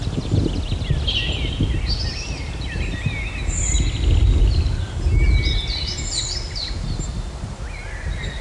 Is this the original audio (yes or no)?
yes